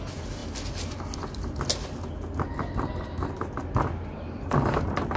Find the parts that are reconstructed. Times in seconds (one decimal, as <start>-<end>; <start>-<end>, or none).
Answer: none